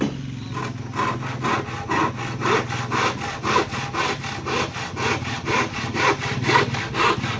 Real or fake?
real